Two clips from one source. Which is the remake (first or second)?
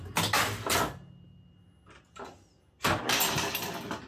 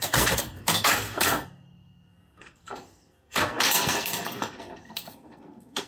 second